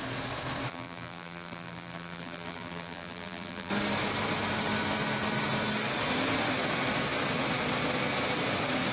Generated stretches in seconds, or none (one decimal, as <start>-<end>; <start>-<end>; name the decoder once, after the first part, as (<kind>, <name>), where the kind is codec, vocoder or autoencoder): 0.7-3.7 (vocoder, BigVGAN v2)